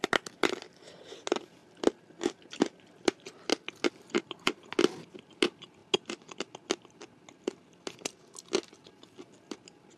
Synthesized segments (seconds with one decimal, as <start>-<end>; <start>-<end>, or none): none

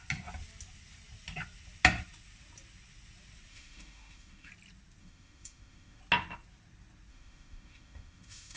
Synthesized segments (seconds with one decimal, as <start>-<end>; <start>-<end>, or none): 3.5-4.5; 5.0-6.0; 7.1-8.6

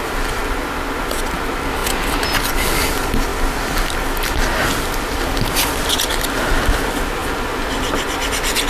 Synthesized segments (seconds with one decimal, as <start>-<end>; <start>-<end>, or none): none